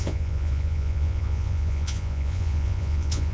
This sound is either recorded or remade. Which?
remade